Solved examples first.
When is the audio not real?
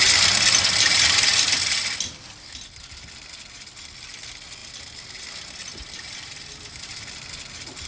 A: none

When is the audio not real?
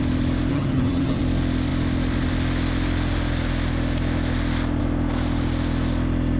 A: 0.5-1.2 (vocoder, HiFi-GAN)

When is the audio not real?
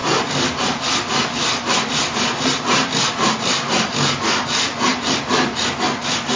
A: none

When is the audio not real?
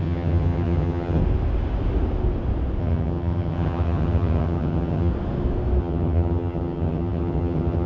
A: 0.0-1.2 (vocoder, HiFi-GAN); 2.8-5.1; 5.8-7.9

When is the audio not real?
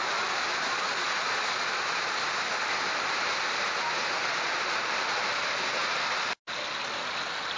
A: none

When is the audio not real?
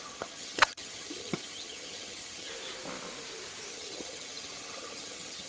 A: 0.0-2.5 (vocoder, HiFi-GAN); 3.7-5.5